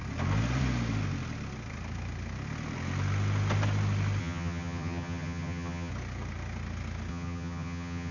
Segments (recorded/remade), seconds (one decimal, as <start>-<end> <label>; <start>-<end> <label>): 0.0-4.2 recorded; 4.2-5.9 remade; 5.9-7.1 recorded; 7.1-8.1 remade